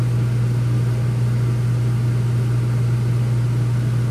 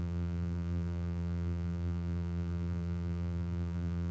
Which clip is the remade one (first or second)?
second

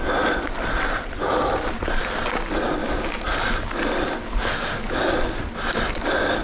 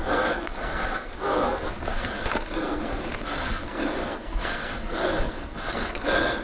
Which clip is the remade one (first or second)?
second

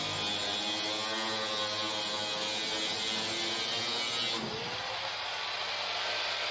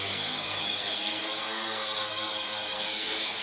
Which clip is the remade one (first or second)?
second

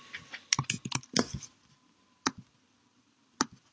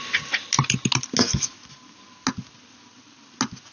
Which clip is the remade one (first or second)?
first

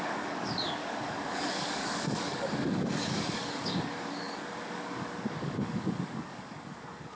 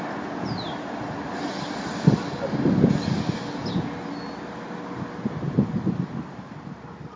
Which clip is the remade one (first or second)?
first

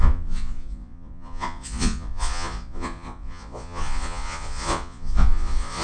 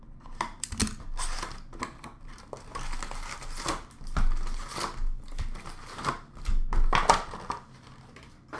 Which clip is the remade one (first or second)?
first